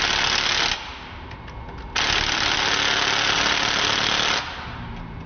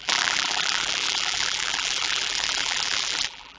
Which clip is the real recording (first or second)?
first